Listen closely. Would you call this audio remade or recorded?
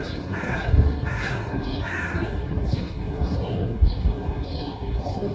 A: remade